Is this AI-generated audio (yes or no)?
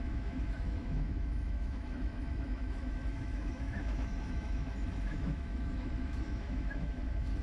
yes